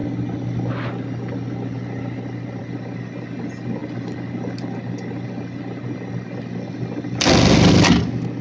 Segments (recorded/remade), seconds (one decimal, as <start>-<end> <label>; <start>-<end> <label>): 0.0-8.4 recorded

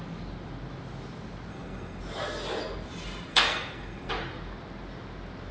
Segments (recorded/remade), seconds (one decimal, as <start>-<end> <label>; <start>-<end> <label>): 0.0-1.5 recorded; 1.5-2.0 remade; 2.0-3.3 recorded; 3.3-4.1 remade; 4.1-5.5 recorded